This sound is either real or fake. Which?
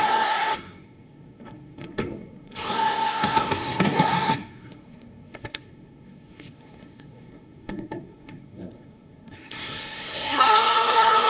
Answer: fake